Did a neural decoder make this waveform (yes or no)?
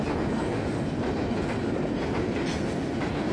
no